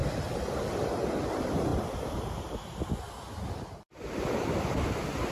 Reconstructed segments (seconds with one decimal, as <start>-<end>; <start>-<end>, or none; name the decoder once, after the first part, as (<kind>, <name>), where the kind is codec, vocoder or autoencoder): none